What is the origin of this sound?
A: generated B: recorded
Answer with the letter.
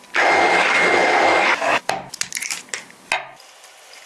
B